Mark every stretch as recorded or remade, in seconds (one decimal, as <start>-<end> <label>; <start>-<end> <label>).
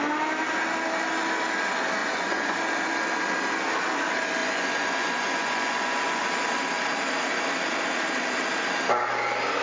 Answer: 0.0-2.0 recorded; 2.0-2.6 remade; 2.6-4.4 recorded; 4.4-6.2 remade; 6.2-9.6 recorded